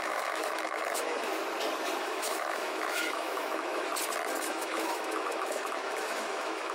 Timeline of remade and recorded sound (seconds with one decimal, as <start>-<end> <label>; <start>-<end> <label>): 0.0-1.3 remade; 1.3-2.0 recorded; 2.0-3.9 remade; 3.9-4.4 recorded; 4.4-6.7 remade